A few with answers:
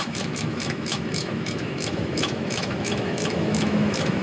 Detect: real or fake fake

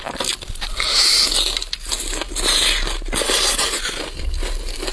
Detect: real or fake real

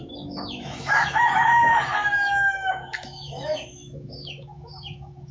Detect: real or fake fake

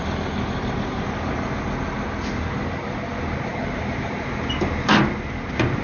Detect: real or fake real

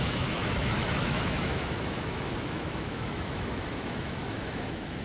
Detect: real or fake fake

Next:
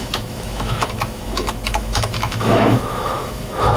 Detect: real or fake fake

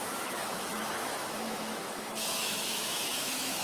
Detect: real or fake fake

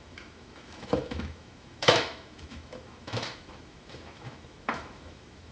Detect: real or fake fake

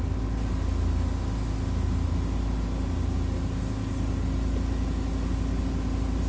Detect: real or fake real